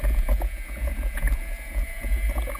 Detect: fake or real fake